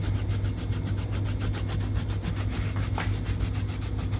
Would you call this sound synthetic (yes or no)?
no